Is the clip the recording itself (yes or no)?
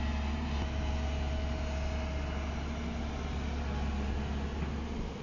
yes